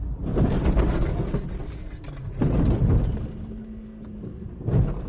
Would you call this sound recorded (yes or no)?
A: yes